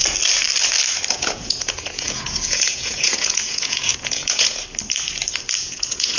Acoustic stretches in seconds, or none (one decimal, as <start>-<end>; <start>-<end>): 0.0-1.1; 4.6-5.6